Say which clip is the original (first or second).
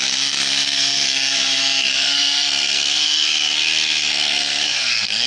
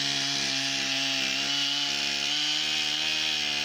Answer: second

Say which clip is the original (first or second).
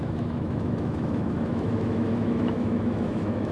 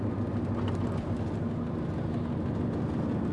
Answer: second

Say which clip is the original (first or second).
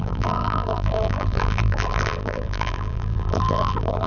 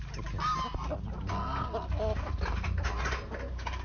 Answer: second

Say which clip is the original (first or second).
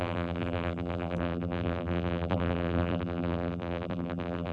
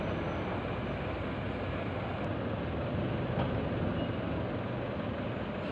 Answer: second